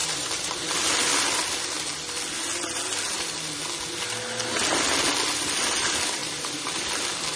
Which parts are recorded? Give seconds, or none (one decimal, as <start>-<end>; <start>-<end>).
0.6-6.2; 6.8-7.4